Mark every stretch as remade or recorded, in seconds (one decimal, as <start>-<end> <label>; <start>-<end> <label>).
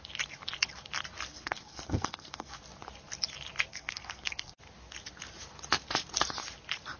0.0-1.3 recorded; 1.3-2.6 remade; 2.6-3.7 recorded; 3.7-4.6 remade; 4.6-7.0 recorded